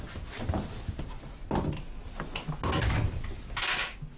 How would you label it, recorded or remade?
recorded